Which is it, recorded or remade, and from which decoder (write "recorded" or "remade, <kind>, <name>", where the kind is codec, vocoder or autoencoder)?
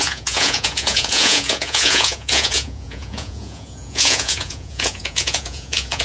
remade, vocoder, Vocos